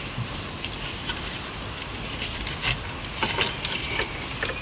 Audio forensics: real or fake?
fake